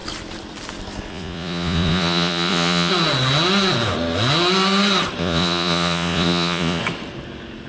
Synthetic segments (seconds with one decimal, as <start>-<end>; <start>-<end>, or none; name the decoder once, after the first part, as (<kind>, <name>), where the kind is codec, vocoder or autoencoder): 1.1-2.9 (vocoder, Vocos); 5.2-6.8